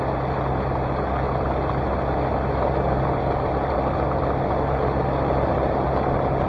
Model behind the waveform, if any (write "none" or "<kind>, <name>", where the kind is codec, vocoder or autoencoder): none